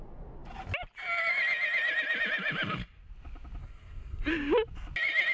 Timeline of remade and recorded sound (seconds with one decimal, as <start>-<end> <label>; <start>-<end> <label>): 0.0-3.6 recorded; 3.6-4.3 remade; 4.3-5.3 recorded